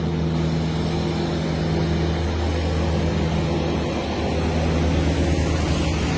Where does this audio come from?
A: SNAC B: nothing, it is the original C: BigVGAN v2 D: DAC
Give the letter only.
B